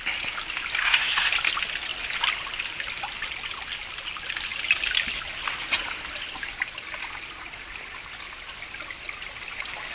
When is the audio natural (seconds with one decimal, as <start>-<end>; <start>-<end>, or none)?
0.0-0.8; 1.3-9.9